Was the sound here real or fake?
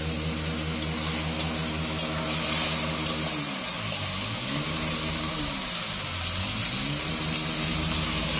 real